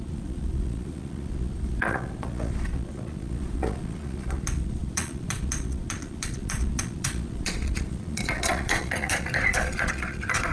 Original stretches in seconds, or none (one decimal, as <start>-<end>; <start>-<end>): none